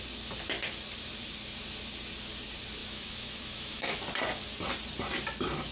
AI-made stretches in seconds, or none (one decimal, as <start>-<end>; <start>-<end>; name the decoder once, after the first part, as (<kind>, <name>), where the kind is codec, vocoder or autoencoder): 2.8-4.0 (autoencoder, DAC-VAE)

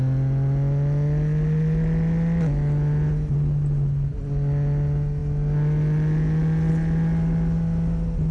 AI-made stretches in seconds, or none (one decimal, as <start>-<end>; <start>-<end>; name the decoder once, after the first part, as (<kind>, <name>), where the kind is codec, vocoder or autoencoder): none

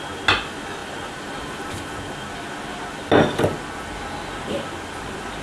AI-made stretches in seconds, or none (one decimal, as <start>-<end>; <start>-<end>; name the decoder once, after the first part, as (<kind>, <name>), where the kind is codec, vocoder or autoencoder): none

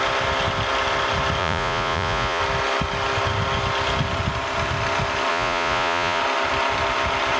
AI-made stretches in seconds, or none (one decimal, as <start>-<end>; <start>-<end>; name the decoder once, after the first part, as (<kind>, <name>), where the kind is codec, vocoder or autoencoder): 1.4-2.4 (vocoder, Vocos); 5.3-6.2

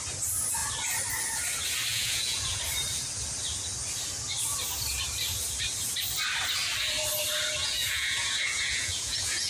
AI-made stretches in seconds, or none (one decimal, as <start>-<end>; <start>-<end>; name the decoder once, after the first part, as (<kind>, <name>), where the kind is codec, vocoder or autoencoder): 1.9-2.6 (vocoder, Vocos); 7.6-9.5

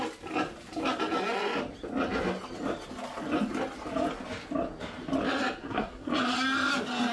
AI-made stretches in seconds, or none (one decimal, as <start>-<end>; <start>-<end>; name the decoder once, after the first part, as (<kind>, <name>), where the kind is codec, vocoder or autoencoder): 5.6-6.1 (codec, SNAC)